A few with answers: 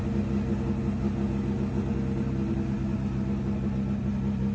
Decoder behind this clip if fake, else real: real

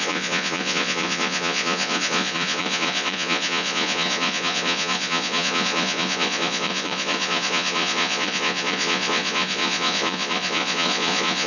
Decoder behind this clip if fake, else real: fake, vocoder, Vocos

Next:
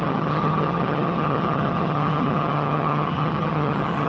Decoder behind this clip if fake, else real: fake, vocoder, HiFi-GAN